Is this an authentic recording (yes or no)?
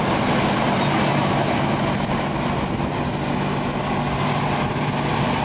yes